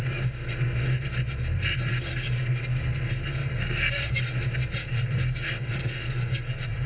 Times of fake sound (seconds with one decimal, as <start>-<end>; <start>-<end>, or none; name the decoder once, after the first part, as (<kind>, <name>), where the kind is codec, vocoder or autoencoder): 1.9-2.4 (codec, DAC); 3.4-4.2; 4.8-6.9